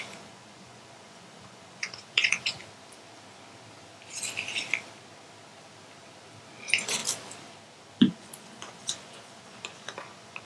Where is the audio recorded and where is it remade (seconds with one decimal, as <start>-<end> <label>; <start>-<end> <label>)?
0.0-2.6 remade; 2.6-6.5 recorded; 6.5-7.0 remade; 7.0-8.0 recorded; 8.0-10.4 remade